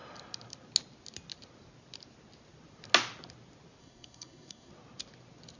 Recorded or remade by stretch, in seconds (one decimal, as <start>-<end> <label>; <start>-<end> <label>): 0.0-3.8 recorded; 3.8-4.7 remade; 4.7-5.6 recorded